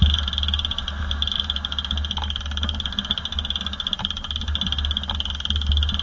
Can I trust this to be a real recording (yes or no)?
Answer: yes